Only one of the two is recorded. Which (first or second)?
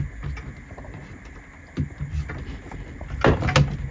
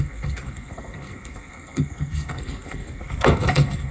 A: first